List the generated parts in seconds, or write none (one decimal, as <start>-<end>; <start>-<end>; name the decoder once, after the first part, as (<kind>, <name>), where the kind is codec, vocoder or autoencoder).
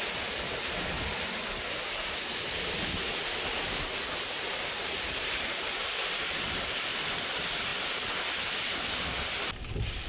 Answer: none